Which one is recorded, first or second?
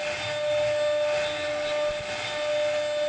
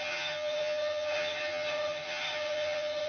first